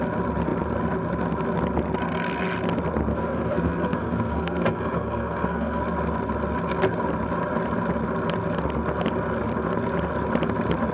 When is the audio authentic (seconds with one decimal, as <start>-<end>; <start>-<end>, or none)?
0.0-3.1; 5.8-10.9